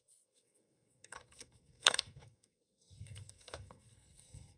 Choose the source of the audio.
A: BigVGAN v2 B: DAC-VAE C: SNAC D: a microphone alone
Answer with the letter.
C